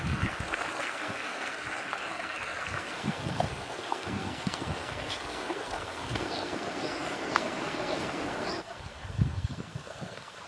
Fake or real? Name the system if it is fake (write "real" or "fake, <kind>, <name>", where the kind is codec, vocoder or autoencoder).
fake, codec, SNAC